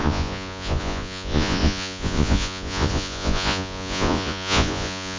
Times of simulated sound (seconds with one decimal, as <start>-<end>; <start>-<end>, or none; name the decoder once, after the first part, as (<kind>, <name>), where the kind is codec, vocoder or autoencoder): 0.0-5.2 (vocoder, Vocos)